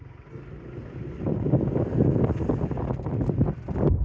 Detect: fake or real real